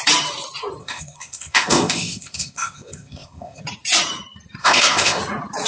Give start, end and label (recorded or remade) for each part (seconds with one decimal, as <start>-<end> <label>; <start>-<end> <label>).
0.0-0.8 recorded; 0.8-3.6 remade; 3.6-4.6 recorded; 4.6-5.2 remade; 5.2-5.7 recorded